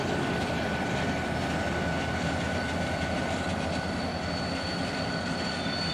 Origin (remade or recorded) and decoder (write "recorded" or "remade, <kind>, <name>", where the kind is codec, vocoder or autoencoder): recorded